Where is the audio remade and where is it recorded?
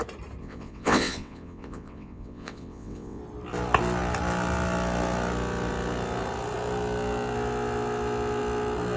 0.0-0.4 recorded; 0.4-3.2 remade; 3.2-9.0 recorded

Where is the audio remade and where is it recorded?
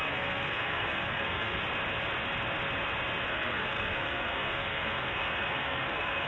0.0-1.6 remade; 1.6-3.3 recorded; 3.3-6.3 remade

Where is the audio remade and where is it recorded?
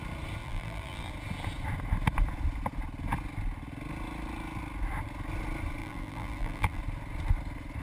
0.0-0.4 recorded; 0.4-1.1 remade; 1.1-5.8 recorded; 5.8-6.8 remade; 6.8-7.8 recorded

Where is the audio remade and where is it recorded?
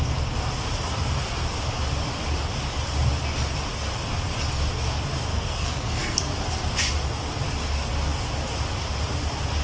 0.0-5.3 recorded; 5.3-6.2 remade; 6.2-9.6 recorded